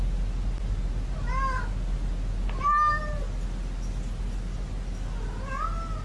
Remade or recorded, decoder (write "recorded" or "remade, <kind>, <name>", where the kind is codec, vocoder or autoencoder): recorded